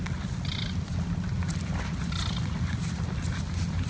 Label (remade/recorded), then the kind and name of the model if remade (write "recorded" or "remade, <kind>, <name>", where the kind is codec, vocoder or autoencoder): recorded